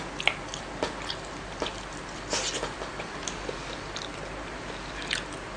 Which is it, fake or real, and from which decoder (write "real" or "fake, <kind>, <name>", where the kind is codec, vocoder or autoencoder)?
real